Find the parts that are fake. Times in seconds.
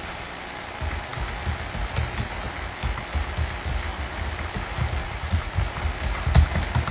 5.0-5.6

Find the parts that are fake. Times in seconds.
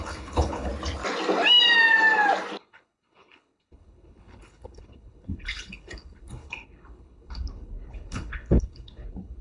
0.0-0.7; 2.6-9.4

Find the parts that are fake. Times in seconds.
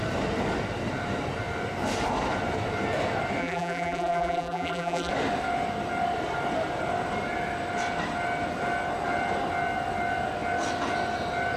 3.4-5.1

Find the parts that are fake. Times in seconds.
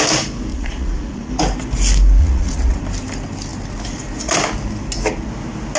0.5-1.3; 2.2-2.8